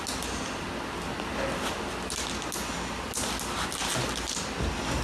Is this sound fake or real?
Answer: real